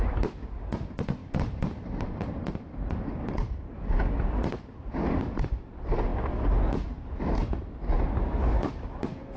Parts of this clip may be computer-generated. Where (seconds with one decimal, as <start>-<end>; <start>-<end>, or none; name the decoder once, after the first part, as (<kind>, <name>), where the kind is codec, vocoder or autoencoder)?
none